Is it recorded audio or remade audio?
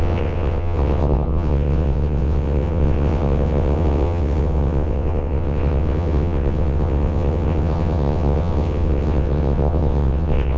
remade